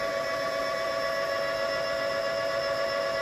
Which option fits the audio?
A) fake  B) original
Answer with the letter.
B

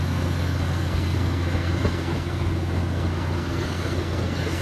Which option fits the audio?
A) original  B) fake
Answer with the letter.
B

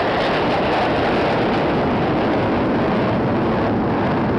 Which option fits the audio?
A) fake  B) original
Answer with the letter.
B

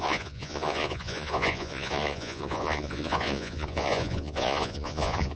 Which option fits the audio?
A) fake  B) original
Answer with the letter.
A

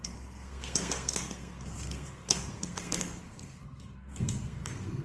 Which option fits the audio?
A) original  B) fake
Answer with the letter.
B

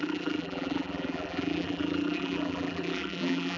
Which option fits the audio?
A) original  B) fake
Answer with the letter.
B